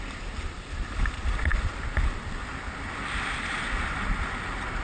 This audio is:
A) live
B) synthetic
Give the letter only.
A